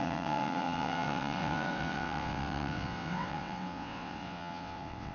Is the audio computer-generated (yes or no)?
yes